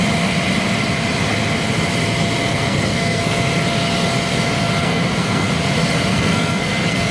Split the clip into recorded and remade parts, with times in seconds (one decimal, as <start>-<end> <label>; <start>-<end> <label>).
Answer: 0.0-2.4 recorded; 2.4-3.4 remade; 3.4-4.8 recorded; 4.8-5.5 remade; 5.5-6.1 recorded; 6.1-7.1 remade